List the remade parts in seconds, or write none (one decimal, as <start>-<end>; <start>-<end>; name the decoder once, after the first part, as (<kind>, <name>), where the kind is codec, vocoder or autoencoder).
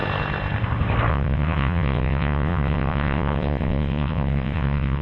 1.1-5.0 (vocoder, WaveNeXt)